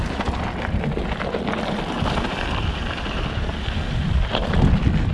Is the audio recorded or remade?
recorded